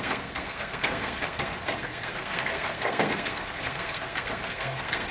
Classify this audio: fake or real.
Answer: fake